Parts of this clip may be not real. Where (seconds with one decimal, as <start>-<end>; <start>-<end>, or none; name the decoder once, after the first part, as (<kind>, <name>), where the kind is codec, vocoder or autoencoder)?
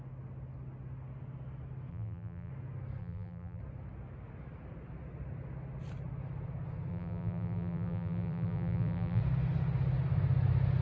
1.9-2.5 (vocoder, BigVGAN v2); 3.0-3.6; 6.9-9.2